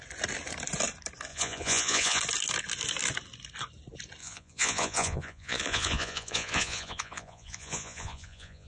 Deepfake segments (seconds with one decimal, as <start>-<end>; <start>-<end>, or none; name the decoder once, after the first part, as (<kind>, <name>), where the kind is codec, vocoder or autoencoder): 1.3-2.2 (vocoder, Vocos); 4.2-8.7

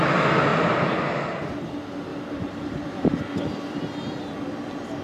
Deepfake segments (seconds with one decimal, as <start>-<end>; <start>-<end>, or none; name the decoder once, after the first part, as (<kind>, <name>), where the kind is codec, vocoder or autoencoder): 2.1-3.2 (vocoder, BigVGAN v2)